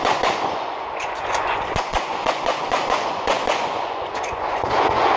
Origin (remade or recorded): remade